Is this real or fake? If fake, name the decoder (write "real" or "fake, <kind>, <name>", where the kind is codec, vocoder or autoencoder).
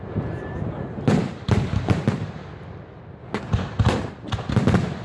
real